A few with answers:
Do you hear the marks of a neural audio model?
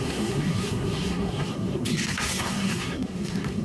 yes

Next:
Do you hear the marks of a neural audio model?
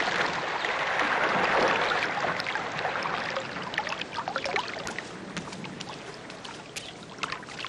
no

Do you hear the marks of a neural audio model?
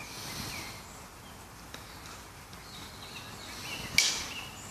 no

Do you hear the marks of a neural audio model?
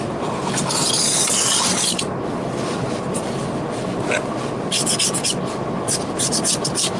no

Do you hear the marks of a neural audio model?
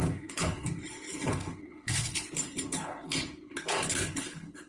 yes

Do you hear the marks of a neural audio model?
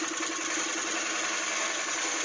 no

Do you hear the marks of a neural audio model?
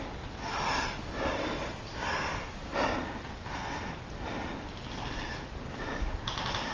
no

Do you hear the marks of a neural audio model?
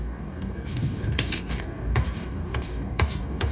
yes